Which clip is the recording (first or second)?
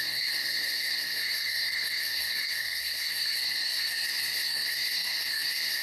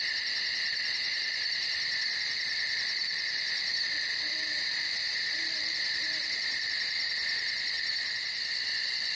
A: second